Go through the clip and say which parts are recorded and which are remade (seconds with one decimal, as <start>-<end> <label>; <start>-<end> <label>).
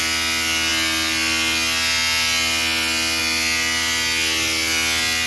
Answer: 0.0-5.3 recorded